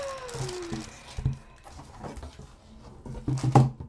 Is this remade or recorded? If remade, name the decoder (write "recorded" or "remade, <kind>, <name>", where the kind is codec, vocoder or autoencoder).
recorded